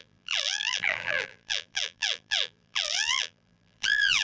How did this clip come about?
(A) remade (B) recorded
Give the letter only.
A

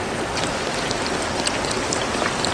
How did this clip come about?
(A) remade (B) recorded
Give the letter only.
B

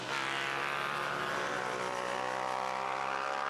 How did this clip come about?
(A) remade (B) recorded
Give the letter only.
B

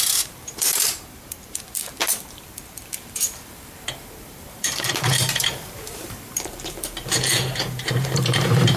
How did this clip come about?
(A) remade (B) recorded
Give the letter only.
A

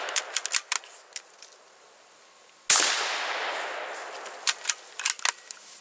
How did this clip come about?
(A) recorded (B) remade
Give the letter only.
A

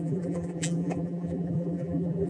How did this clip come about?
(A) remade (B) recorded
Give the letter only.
A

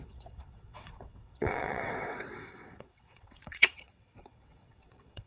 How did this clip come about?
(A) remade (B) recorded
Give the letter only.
A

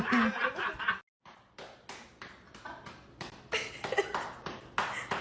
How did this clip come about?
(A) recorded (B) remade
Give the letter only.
A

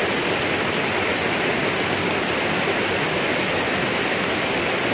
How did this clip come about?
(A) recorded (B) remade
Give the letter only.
A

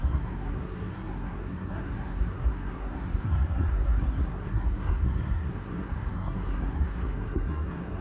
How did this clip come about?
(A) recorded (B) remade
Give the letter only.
B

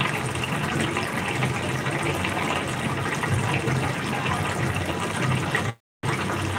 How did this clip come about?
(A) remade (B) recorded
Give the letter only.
B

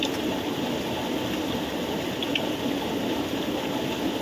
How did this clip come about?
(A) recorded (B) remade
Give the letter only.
A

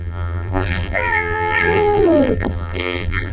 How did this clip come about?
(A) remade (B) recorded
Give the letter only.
A